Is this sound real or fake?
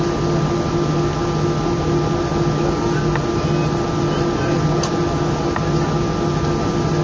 real